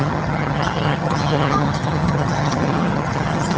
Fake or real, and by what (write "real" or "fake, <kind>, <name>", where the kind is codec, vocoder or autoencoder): fake, vocoder, HiFi-GAN